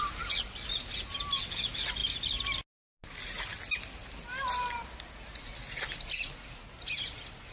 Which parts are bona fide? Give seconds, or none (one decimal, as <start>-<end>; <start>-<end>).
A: 0.0-7.5

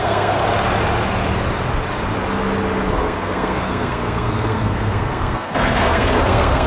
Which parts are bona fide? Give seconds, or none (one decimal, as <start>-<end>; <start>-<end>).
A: 0.4-2.9

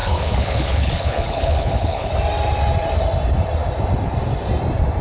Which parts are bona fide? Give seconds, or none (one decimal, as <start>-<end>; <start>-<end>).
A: 2.1-5.0

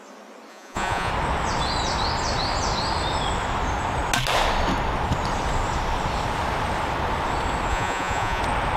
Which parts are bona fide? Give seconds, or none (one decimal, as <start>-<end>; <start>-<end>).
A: 0.0-0.5; 1.1-7.7; 8.4-8.8